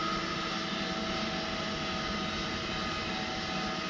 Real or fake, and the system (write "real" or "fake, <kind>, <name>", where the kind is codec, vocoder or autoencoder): real